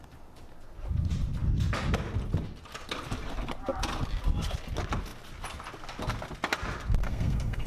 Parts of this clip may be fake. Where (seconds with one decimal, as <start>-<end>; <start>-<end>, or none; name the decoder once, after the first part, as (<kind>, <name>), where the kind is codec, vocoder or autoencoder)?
7.0-7.7 (codec, SNAC)